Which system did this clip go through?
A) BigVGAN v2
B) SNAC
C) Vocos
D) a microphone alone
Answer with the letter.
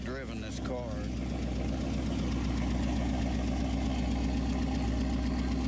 D